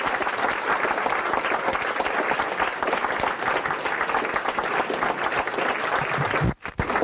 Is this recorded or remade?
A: recorded